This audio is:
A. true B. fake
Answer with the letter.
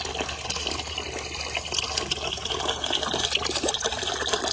A